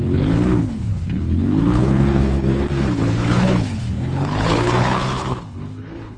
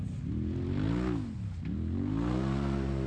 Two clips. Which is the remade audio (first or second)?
first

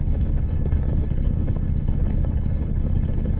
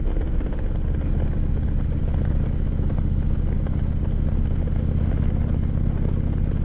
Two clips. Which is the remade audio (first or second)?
first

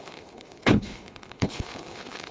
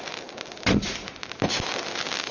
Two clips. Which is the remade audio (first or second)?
first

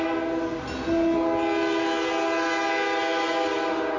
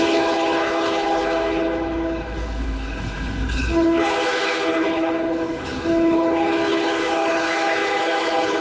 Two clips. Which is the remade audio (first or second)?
second